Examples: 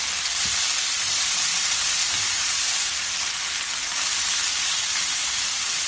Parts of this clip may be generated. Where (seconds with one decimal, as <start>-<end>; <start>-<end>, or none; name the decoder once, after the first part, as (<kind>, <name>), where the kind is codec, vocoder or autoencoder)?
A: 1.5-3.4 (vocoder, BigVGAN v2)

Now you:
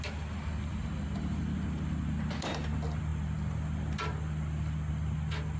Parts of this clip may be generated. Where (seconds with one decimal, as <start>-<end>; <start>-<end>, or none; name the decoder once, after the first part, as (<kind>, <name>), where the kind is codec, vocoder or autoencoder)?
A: none

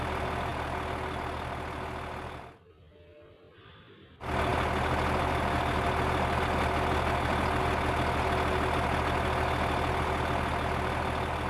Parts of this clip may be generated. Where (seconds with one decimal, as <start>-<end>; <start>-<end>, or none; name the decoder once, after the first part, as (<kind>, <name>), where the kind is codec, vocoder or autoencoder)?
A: none